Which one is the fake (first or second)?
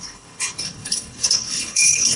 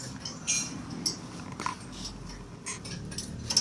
first